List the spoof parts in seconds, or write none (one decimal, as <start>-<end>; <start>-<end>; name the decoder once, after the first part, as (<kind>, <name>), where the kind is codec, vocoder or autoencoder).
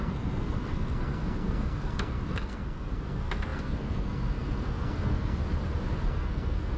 0.0-5.4 (codec, SNAC); 6.1-6.8